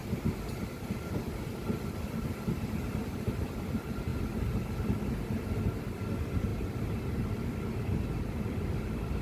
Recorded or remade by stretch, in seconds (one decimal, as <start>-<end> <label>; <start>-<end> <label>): 0.0-9.2 recorded